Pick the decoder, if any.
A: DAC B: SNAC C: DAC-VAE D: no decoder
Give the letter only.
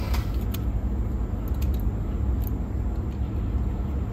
D